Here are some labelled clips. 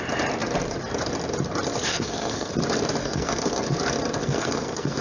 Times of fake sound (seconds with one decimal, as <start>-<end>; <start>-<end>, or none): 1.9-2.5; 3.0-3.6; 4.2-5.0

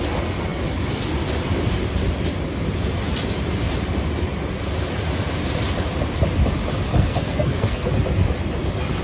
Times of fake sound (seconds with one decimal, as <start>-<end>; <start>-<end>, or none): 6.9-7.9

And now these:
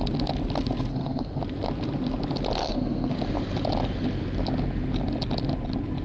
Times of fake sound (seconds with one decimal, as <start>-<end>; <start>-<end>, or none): 0.9-1.4; 2.6-3.1

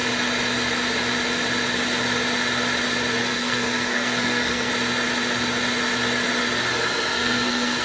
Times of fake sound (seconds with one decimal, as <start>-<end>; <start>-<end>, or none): 3.2-4.7; 7.1-7.8